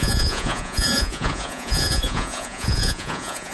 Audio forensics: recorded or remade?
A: remade